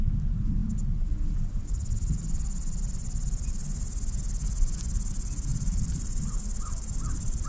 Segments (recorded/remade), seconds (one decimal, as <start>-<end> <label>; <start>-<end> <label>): 0.0-5.5 recorded; 5.5-7.5 remade